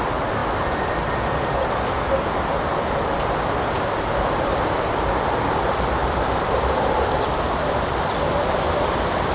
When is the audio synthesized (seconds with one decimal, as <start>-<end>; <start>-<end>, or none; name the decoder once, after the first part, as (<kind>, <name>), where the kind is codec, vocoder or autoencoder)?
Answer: 0.0-0.4 (vocoder, BigVGAN v2); 3.5-9.3